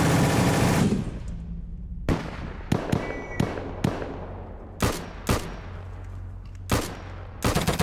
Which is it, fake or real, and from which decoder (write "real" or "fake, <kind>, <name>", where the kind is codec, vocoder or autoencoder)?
real